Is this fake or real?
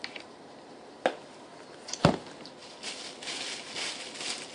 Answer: real